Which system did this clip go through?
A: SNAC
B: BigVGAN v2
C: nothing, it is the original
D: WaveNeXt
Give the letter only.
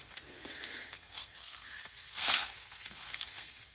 A